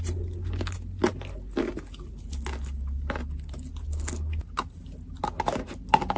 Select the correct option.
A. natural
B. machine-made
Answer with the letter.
A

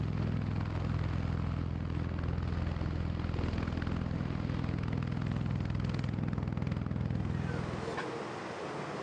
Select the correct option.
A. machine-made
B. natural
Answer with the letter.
B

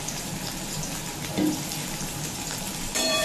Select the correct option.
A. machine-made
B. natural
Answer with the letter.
A